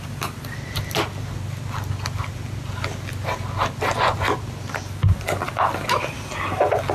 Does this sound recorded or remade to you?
recorded